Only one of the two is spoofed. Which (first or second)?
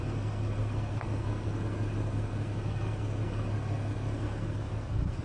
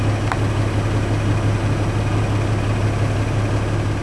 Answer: first